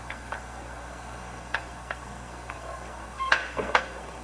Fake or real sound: fake